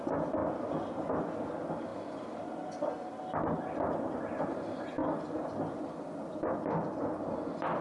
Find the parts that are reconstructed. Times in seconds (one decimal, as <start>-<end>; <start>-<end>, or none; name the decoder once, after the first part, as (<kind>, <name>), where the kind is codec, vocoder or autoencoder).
none